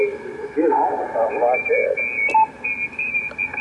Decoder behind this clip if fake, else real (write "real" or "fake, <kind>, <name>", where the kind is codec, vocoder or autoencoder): real